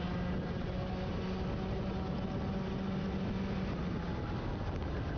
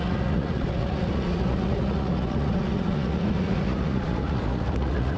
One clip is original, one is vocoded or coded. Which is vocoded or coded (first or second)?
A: second